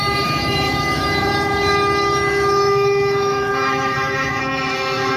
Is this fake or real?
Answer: fake